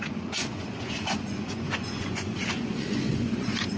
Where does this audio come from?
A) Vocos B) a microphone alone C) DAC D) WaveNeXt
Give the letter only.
A